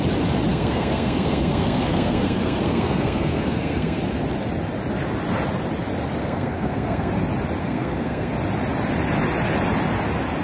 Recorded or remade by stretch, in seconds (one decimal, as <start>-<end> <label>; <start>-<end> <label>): 0.0-0.5 recorded; 0.5-4.0 remade; 4.0-6.2 recorded; 6.2-7.1 remade; 7.1-7.6 recorded; 7.6-8.3 remade; 8.3-10.4 recorded